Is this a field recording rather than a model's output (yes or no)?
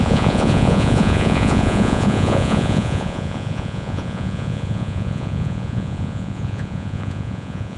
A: no